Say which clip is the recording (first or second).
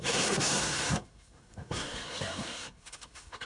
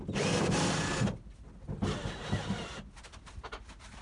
second